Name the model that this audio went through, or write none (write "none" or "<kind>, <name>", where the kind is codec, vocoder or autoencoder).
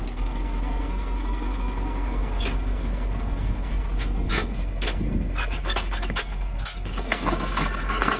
codec, SNAC